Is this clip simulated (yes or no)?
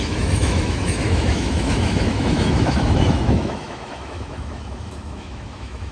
yes